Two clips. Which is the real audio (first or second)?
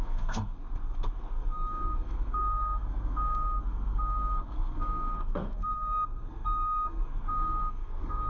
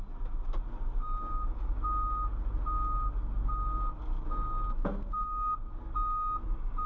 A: second